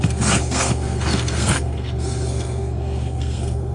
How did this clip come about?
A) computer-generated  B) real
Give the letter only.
A